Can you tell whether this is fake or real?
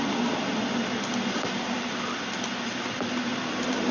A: real